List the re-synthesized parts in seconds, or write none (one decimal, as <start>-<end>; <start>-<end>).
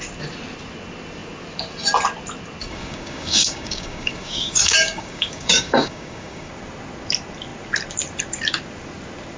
2.6-6.5